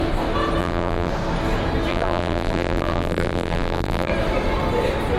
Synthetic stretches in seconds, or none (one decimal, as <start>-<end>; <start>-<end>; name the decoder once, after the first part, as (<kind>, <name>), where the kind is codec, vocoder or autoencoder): 0.6-1.1 (vocoder, BigVGAN v2); 1.9-4.1